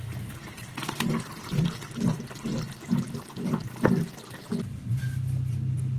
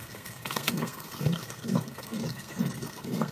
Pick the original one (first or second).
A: first